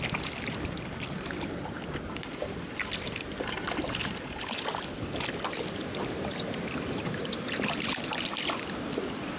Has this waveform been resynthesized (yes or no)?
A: no